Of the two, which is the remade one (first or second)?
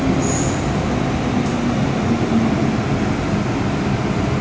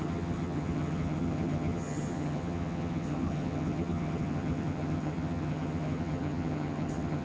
second